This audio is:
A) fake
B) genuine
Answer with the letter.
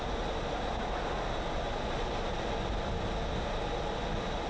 B